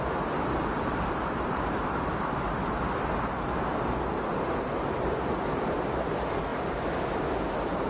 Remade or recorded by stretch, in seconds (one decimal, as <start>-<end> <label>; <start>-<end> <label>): 0.0-0.6 recorded; 0.6-2.8 remade; 2.8-4.3 recorded; 4.3-5.3 remade; 5.3-7.9 recorded

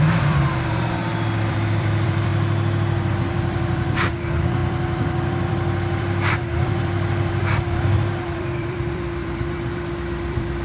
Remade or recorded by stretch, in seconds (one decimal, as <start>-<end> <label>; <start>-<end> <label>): 0.0-2.3 remade; 2.3-3.1 recorded; 3.1-10.6 remade

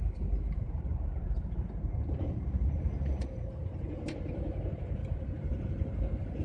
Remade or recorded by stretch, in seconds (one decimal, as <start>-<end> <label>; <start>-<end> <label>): 0.0-6.4 remade